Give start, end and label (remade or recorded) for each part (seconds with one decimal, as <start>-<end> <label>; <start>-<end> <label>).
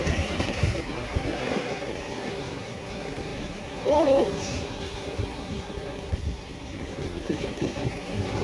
0.0-8.4 remade